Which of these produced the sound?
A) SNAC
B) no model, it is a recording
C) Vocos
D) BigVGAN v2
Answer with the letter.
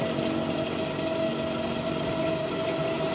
B